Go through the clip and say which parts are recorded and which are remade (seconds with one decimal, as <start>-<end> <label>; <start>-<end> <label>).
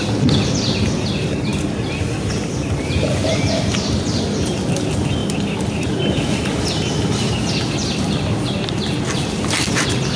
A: 0.0-10.2 recorded